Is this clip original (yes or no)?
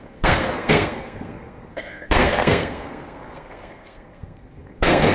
no